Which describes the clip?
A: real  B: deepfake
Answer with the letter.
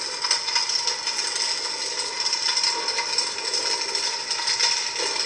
A